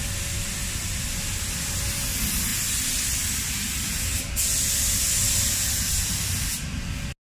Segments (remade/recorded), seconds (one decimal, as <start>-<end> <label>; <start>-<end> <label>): 0.0-7.3 recorded